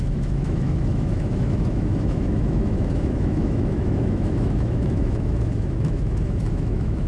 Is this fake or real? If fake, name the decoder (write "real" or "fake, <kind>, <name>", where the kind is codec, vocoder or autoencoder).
fake, autoencoder, DAC-VAE